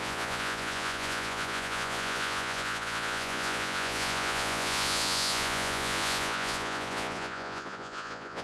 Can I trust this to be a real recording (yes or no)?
no